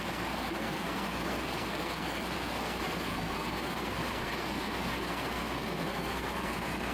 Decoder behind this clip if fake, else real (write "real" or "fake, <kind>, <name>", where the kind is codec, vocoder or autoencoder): fake, codec, SNAC